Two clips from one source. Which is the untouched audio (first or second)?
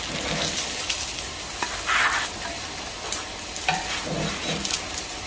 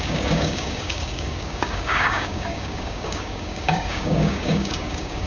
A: first